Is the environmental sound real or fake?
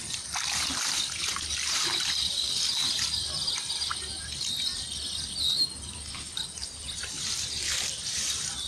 real